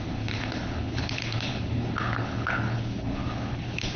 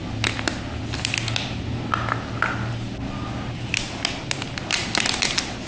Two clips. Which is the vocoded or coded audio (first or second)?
first